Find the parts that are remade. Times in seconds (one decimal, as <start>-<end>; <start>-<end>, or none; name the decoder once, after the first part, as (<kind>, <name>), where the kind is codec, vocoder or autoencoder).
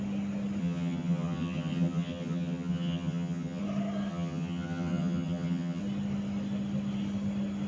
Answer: 0.6-3.6 (vocoder, HiFi-GAN); 4.1-5.8